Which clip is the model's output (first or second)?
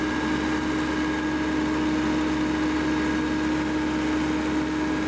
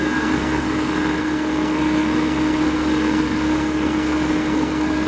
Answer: second